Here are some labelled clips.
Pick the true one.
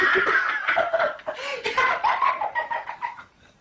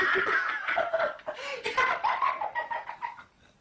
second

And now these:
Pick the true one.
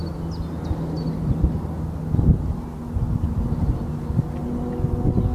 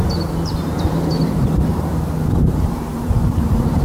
first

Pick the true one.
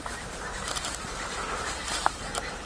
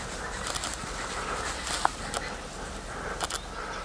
second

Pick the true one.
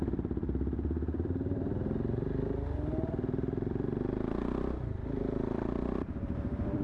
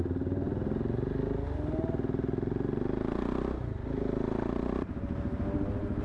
second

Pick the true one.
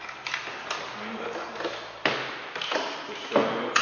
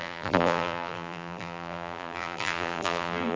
first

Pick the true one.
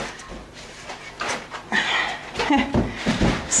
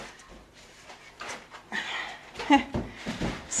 first